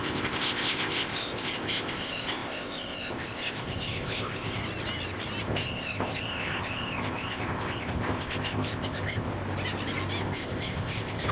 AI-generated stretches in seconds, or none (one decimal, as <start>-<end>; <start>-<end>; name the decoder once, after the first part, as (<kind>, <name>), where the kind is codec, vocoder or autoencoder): 0.0-4.6 (codec, ZipCodec); 5.4-9.3; 10.2-11.3